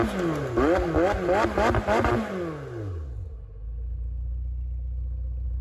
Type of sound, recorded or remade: recorded